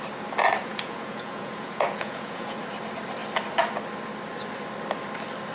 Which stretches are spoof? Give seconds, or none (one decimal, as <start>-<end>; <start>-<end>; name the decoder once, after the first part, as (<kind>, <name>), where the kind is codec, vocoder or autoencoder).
0.6-2.6 (vocoder, Vocos)